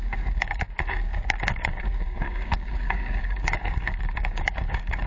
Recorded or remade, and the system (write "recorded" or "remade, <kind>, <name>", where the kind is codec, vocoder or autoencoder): remade, codec, DAC